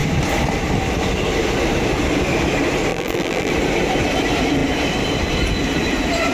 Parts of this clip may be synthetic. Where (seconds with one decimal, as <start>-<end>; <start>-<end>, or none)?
2.9-3.5